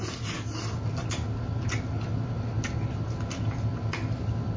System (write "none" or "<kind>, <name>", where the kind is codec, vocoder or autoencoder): none